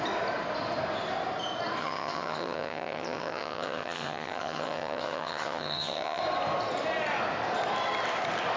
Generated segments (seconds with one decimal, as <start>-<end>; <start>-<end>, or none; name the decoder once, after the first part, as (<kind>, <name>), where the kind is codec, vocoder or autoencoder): 1.8-6.2 (vocoder, HiFi-GAN)